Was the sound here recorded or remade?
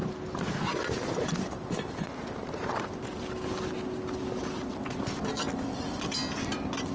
recorded